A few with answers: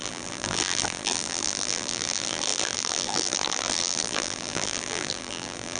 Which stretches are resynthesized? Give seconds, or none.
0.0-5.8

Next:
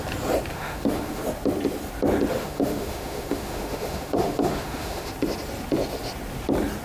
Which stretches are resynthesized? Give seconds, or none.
0.5-1.2; 2.3-5.1